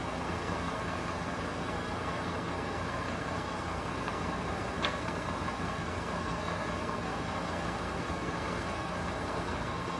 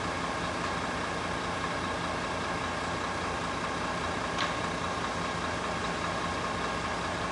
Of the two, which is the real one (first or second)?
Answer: second